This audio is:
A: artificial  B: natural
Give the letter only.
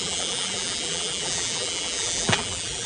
A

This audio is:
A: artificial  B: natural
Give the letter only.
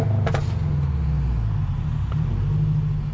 B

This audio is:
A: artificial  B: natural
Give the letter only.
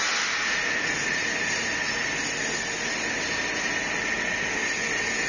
B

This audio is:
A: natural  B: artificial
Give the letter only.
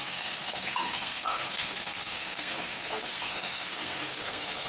B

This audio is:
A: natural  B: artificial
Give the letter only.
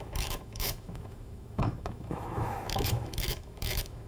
B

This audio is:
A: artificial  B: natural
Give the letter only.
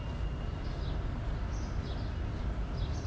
B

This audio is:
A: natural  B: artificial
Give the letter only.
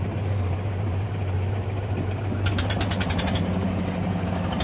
B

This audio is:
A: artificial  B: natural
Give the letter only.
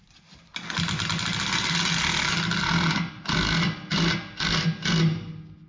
B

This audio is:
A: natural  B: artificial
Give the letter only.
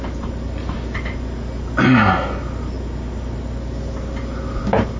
A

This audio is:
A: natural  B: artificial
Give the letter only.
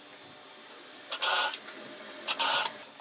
A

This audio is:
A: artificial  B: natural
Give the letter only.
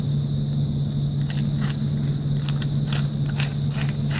B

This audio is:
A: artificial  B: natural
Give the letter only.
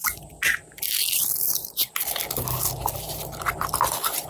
B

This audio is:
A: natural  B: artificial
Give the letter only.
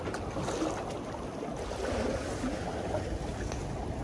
A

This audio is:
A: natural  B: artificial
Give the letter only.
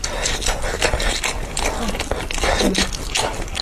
A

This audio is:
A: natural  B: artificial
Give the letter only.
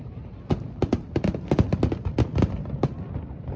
A